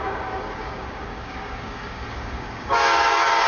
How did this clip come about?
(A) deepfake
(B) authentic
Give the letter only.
A